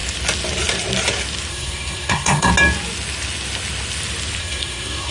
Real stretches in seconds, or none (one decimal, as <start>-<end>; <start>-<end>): 0.0-1.5; 2.5-4.4

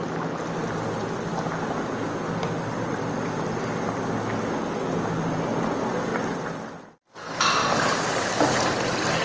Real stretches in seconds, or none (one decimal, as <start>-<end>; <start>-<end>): 0.0-9.2

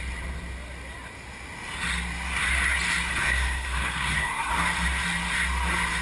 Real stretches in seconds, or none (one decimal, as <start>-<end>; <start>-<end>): 0.0-3.2; 4.5-6.0

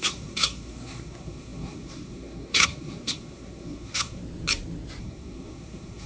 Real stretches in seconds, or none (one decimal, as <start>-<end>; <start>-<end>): 4.2-5.0

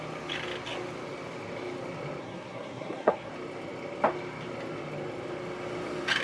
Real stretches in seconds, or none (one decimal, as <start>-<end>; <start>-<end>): 0.0-2.2; 3.3-6.2

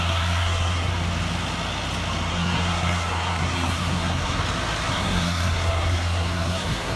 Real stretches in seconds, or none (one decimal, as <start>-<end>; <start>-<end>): 0.9-2.3; 4.4-4.9

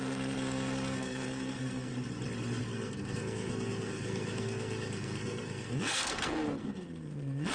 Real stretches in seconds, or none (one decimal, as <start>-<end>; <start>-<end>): 1.9-2.6